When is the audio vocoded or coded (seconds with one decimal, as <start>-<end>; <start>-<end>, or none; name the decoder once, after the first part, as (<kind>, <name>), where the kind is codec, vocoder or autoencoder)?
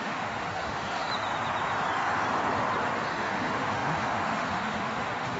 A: 0.0-1.1 (autoencoder, DAC-VAE); 3.0-5.4